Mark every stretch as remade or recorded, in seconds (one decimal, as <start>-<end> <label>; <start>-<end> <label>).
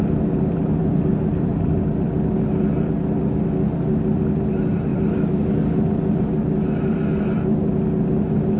0.0-4.9 recorded; 4.9-6.2 remade; 6.2-8.6 recorded